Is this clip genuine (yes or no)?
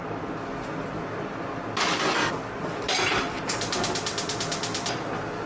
yes